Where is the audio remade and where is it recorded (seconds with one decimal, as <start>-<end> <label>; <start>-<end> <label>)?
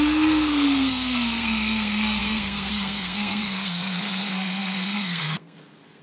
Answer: 0.0-6.0 remade